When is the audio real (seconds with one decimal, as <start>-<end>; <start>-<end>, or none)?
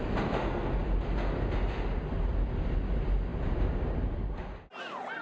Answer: 0.0-5.2